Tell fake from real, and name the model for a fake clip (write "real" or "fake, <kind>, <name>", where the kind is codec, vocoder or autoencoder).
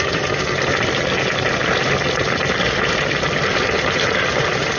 real